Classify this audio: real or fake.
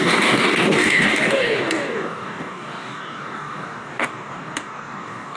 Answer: fake